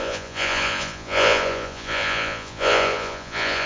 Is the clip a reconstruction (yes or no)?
yes